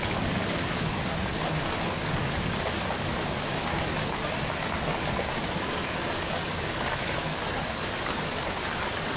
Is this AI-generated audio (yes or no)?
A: yes